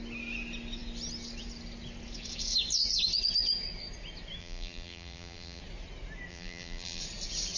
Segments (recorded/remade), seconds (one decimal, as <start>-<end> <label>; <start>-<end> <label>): 0.0-4.4 recorded; 4.4-5.6 remade; 5.6-6.3 recorded; 6.3-7.0 remade; 7.0-7.6 recorded